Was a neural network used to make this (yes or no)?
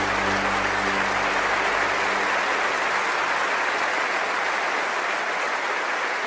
no